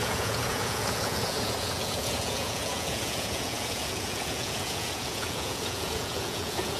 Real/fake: fake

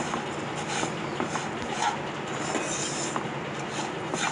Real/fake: real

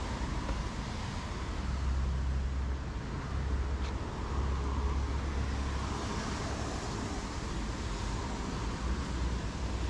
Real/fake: real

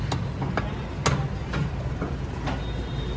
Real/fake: real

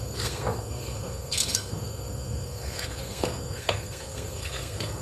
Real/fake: fake